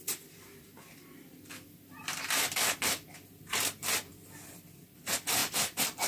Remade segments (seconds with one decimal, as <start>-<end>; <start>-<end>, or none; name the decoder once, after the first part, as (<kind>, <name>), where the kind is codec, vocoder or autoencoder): 2.0-3.4 (vocoder, BigVGAN v2); 5.4-6.1